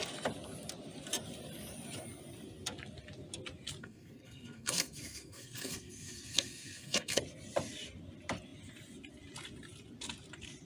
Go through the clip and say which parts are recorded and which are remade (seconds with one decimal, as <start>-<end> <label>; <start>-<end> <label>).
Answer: 0.0-3.8 recorded; 3.8-7.2 remade; 7.2-10.7 recorded